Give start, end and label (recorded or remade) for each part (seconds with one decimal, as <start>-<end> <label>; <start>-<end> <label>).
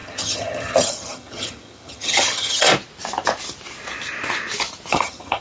0.0-2.7 remade; 2.7-4.9 recorded; 4.9-5.4 remade